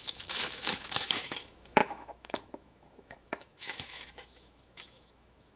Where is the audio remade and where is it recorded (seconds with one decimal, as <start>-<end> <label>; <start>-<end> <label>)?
0.0-5.6 remade